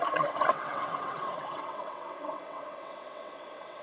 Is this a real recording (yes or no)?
no